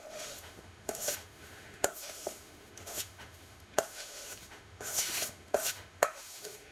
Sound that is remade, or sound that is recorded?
remade